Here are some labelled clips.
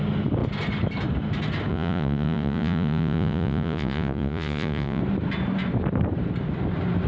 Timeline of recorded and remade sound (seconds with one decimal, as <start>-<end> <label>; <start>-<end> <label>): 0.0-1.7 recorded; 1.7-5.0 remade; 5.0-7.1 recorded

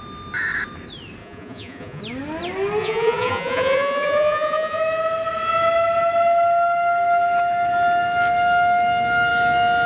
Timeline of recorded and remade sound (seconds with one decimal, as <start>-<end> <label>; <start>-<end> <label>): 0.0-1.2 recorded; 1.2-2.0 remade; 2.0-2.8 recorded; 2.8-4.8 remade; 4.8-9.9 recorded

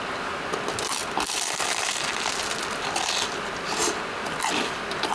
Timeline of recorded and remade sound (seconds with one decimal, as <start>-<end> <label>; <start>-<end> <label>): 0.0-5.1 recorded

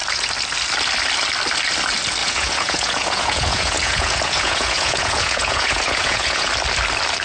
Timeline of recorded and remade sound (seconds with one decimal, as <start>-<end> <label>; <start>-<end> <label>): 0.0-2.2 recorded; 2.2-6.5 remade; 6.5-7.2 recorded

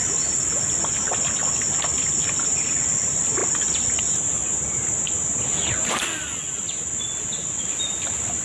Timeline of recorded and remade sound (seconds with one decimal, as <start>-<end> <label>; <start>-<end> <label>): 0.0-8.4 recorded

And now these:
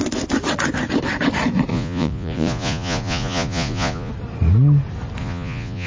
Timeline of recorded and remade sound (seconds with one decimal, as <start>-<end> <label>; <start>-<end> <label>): 0.0-1.7 recorded; 1.7-4.1 remade; 4.1-5.2 recorded; 5.2-5.9 remade